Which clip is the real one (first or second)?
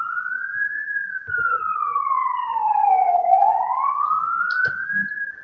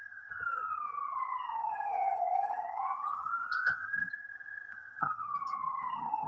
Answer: first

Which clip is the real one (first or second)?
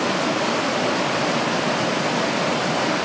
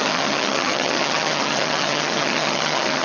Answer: first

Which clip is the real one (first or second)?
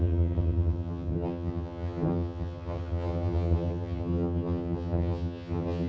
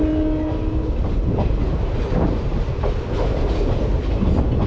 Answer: second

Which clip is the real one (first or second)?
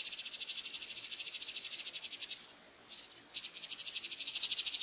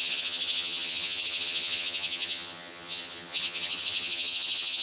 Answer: first